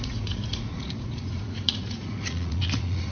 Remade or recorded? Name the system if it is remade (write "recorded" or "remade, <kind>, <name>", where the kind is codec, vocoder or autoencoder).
remade, vocoder, Vocos